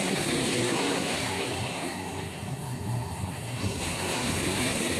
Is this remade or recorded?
remade